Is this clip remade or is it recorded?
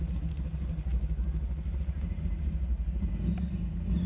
recorded